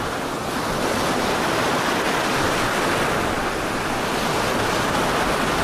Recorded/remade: recorded